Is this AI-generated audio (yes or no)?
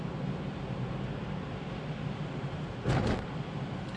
no